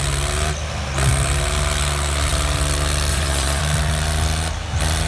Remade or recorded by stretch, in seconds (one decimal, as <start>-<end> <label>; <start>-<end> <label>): 0.0-3.1 recorded; 3.1-3.6 remade; 3.6-5.1 recorded